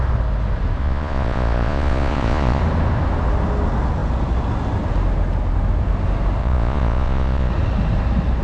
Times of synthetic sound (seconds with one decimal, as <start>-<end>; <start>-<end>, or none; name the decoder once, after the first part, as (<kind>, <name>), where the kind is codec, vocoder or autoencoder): 0.8-2.6 (vocoder, Vocos); 6.4-7.5